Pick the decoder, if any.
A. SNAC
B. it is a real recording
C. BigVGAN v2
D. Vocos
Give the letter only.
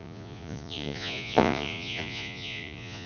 D